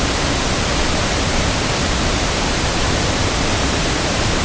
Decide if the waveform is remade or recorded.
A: remade